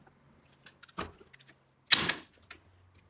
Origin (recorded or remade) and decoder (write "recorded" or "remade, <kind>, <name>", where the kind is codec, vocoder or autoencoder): recorded